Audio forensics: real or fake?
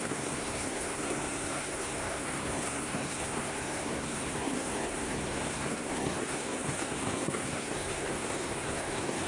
fake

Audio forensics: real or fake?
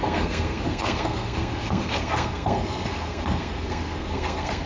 fake